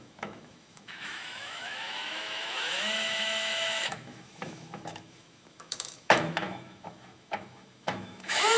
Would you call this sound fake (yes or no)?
yes